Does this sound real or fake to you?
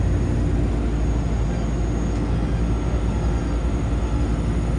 real